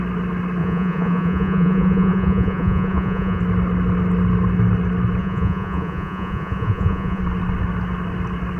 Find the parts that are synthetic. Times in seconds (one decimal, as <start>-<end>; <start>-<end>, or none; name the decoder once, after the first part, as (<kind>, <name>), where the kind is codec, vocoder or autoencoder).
0.6-3.4 (vocoder, Vocos); 5.2-7.2